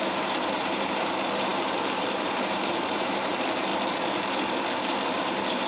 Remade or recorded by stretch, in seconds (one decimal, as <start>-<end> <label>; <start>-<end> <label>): 0.0-3.7 remade; 3.7-5.2 recorded; 5.2-5.7 remade